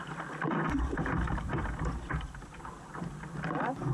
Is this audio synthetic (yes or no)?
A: no